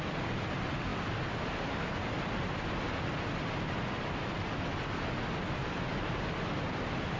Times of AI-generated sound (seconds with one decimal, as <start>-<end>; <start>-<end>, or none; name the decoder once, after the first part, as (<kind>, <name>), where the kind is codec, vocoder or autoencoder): none